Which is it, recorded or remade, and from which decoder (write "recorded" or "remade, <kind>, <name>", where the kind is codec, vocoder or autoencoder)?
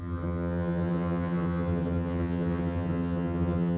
remade, vocoder, HiFi-GAN